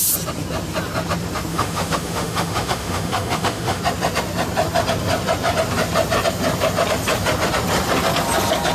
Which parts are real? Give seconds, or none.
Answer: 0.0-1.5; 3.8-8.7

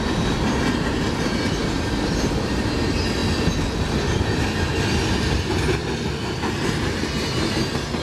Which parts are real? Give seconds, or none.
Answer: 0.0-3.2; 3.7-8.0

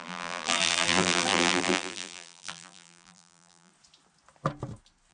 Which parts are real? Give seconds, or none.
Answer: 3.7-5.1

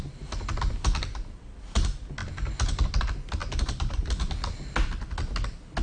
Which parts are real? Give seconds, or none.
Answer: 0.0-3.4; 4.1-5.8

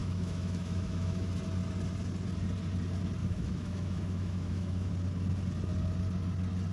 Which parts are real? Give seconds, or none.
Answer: 1.3-3.2; 4.9-6.7